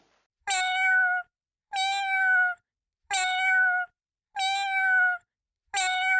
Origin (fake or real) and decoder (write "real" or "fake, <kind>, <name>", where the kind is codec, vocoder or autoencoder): real